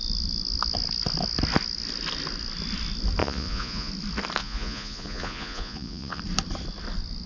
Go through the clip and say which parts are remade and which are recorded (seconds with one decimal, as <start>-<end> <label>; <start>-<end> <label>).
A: 0.0-3.2 recorded; 3.2-3.9 remade; 3.9-4.4 recorded; 4.4-6.2 remade; 6.2-7.3 recorded